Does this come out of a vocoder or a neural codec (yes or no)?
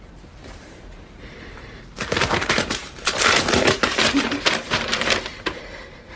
yes